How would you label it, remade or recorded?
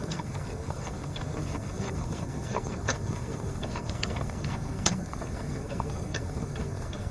remade